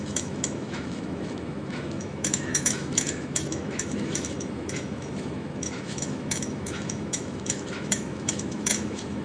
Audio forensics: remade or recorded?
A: remade